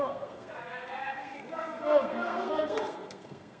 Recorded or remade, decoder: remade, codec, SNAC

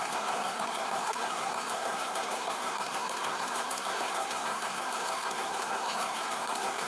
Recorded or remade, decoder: remade, codec, SNAC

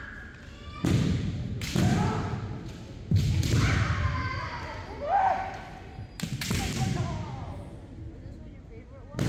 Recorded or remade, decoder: recorded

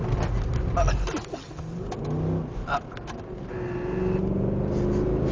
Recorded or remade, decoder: recorded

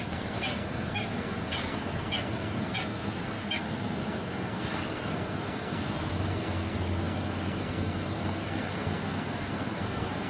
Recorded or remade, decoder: remade, codec, SNAC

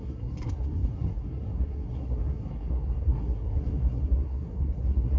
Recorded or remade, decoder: remade, codec, SNAC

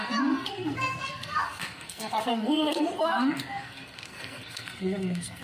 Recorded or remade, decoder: remade, codec, SNAC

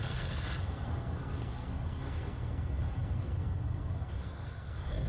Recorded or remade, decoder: remade, codec, SNAC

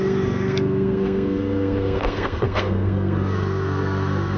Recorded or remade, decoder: remade, codec, SNAC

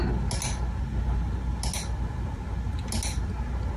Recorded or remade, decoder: recorded